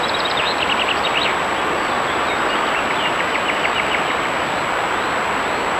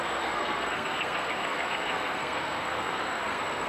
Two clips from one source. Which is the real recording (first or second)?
first